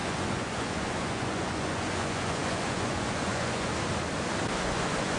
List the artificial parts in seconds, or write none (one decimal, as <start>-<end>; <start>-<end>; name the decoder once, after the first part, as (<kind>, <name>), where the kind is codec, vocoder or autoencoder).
0.0-3.7 (vocoder, Vocos); 4.5-5.2